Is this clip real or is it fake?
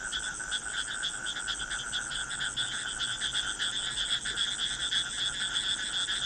real